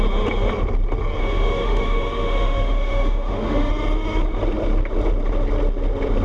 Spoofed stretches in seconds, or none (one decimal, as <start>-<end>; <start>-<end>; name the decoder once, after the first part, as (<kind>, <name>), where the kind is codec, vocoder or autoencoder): 1.2-3.7 (autoencoder, DAC-VAE)